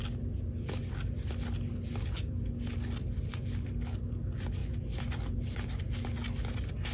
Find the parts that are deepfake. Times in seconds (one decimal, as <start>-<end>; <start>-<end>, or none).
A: none